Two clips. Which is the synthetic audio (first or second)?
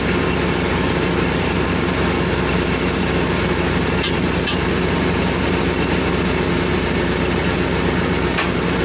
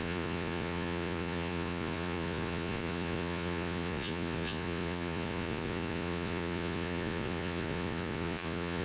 second